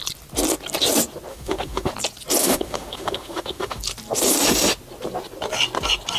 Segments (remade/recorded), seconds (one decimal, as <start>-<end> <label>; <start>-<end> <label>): 0.0-1.3 recorded; 1.3-1.9 remade; 1.9-2.4 recorded; 2.4-3.8 remade; 3.8-6.2 recorded